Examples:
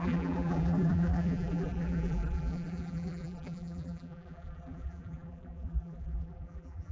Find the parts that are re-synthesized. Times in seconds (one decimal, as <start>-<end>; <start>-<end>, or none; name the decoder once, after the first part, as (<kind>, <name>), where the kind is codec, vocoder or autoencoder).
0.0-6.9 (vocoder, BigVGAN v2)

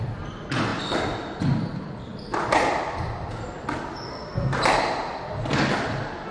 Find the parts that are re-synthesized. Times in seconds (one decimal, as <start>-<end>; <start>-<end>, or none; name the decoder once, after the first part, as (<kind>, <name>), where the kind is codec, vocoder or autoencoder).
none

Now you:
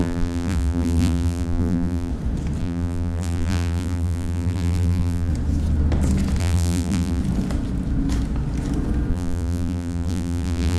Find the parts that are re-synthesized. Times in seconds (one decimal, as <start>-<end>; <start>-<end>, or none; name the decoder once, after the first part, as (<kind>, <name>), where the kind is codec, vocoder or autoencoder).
0.0-2.1 (vocoder, BigVGAN v2); 2.6-5.3; 6.4-7.2; 9.1-10.8